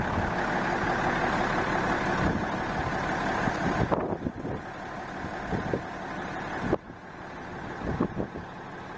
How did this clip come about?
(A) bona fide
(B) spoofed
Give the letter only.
A